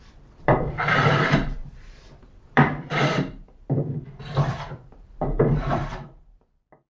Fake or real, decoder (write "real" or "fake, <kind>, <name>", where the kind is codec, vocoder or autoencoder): fake, vocoder, BigVGAN v2